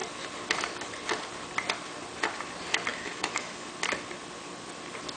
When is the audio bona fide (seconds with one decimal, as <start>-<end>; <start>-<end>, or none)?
0.0-2.9; 3.7-5.2